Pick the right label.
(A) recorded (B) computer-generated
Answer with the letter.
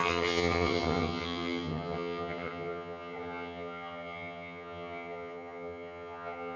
B